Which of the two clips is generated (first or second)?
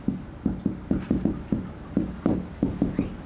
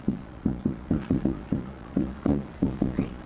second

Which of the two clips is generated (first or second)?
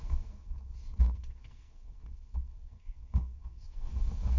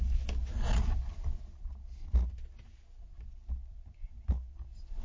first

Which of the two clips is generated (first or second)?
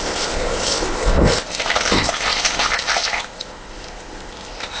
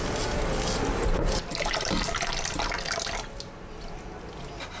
first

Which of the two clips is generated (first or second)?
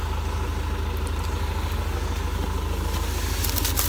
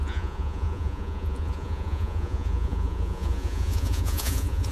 second